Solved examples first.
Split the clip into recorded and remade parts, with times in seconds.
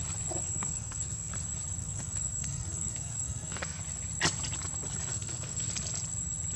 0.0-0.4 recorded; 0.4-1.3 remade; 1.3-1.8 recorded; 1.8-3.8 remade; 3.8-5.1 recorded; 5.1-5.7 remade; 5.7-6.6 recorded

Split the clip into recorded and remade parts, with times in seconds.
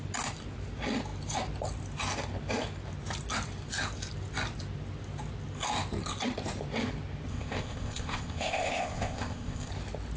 0.0-7.3 recorded; 7.3-9.7 remade; 9.7-10.2 recorded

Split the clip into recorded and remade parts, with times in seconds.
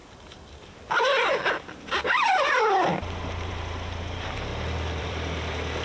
0.0-3.5 recorded; 3.5-4.5 remade; 4.5-5.0 recorded; 5.0-5.8 remade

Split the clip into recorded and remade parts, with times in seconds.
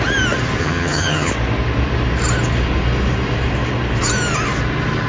0.0-0.6 recorded; 0.6-1.3 remade; 1.3-5.1 recorded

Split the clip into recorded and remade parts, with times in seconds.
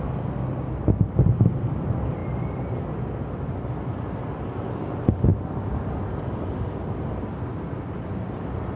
0.0-5.3 recorded; 5.3-8.8 remade